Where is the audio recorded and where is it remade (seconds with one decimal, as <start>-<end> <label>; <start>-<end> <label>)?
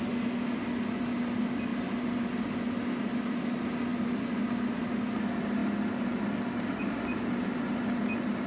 0.0-8.5 recorded